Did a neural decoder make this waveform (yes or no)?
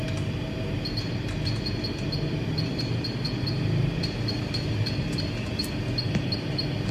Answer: no